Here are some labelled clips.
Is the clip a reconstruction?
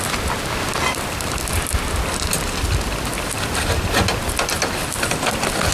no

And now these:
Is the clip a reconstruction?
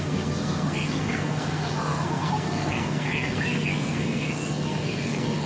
yes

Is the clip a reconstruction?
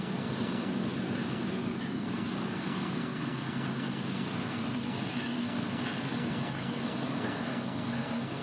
yes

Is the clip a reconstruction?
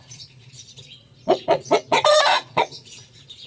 yes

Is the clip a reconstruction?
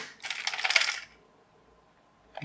no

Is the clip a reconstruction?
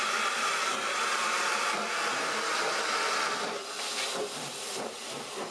yes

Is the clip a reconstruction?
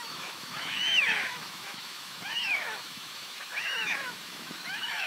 yes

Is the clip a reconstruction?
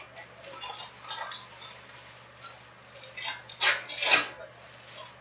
no